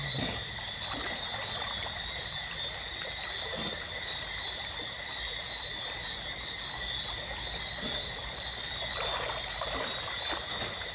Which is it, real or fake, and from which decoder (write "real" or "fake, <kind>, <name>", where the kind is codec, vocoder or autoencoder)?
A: real